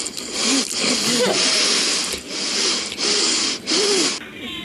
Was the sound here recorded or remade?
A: recorded